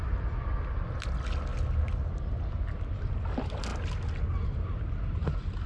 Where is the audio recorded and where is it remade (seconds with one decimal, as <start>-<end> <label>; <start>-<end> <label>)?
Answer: 0.0-5.7 recorded